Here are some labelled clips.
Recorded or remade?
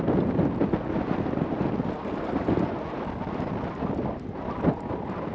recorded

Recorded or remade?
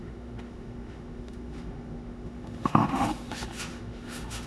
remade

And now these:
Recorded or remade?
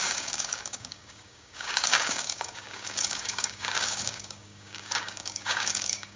remade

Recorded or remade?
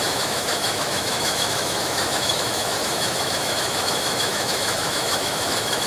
remade